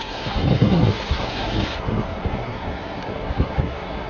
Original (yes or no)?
no